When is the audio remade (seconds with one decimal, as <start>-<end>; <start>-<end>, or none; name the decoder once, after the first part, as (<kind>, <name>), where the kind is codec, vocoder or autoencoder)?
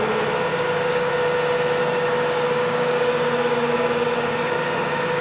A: 0.5-1.1 (codec, DAC); 1.8-5.2